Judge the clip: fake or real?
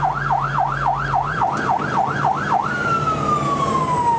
real